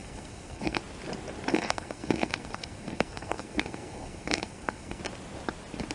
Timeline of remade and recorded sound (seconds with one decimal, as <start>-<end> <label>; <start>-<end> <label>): 0.0-0.8 remade; 0.8-1.5 recorded; 1.5-5.0 remade; 5.0-5.9 recorded